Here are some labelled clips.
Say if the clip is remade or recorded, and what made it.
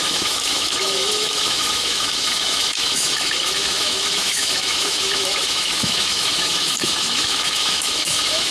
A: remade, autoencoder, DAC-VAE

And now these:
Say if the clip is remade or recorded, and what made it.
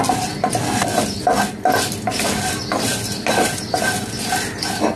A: recorded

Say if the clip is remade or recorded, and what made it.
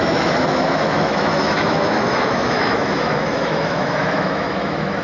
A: remade, autoencoder, DAC-VAE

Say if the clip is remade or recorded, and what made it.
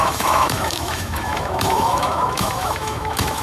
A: remade, autoencoder, DAC-VAE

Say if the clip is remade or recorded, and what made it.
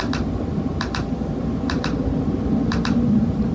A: recorded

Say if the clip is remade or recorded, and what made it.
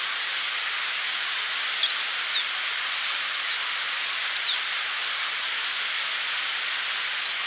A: recorded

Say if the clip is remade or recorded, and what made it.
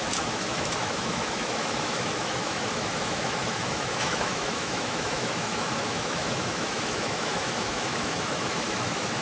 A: remade, autoencoder, DAC-VAE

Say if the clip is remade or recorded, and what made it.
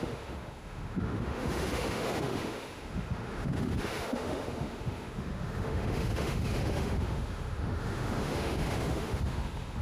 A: remade, autoencoder, DAC-VAE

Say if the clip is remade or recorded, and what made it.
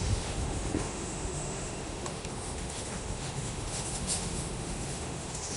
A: remade, autoencoder, DAC-VAE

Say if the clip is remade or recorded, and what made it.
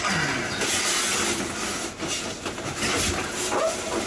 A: recorded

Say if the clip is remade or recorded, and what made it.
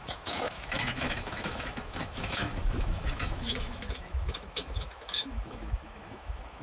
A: remade, autoencoder, DAC-VAE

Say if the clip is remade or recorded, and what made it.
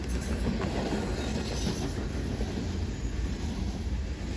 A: recorded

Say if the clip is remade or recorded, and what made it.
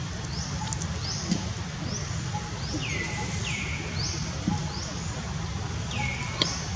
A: recorded